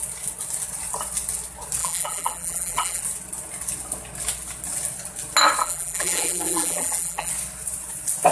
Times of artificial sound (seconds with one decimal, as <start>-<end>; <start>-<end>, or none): 1.8-3.0; 5.6-7.3

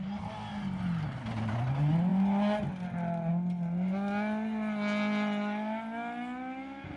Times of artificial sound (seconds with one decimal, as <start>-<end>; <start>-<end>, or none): none

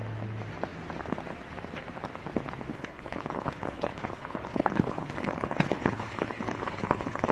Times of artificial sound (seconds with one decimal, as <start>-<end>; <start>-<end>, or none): 2.7-7.3

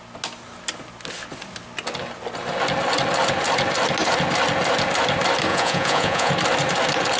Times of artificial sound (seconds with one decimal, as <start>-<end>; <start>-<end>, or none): 5.5-6.3

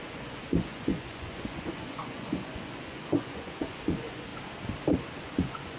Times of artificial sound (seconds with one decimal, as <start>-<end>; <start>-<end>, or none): 0.0-4.3; 5.2-5.8